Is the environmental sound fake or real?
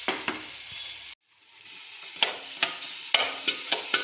real